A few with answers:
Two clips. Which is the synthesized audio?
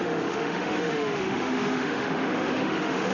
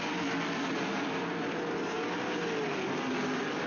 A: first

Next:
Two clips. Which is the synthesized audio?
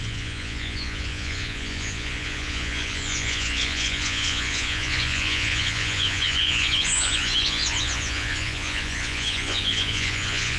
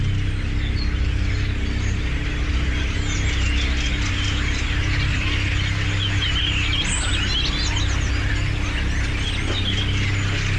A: first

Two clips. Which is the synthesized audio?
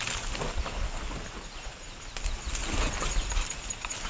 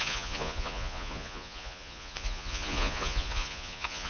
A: second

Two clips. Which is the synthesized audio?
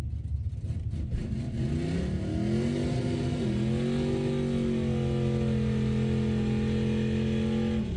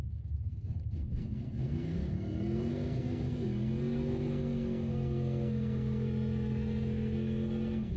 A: second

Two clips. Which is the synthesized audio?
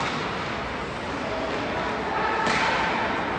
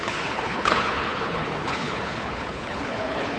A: second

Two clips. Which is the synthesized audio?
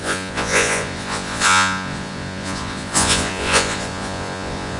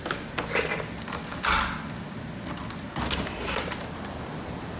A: first